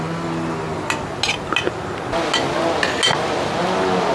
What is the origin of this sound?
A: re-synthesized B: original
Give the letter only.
B